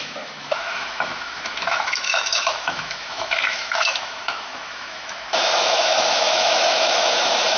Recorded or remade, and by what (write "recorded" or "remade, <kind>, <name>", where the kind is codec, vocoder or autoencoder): remade, autoencoder, DAC-VAE